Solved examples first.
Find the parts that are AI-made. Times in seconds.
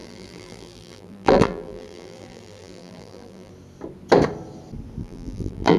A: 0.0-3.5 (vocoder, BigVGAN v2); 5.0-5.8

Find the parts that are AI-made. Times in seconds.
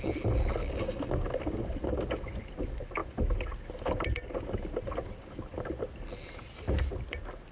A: 0.6-1.1 (codec, DAC)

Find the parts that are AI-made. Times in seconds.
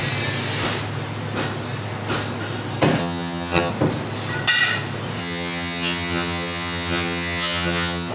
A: 3.0-3.7 (vocoder, HiFi-GAN); 5.2-8.1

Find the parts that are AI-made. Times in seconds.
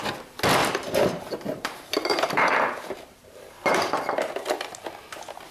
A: 0.6-3.9 (vocoder, BigVGAN v2)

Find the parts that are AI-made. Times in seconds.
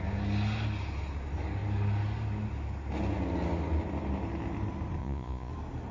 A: 5.0-5.5 (vocoder, Vocos)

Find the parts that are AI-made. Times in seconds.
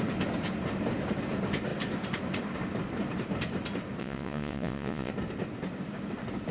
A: 4.0-5.1 (vocoder, Vocos)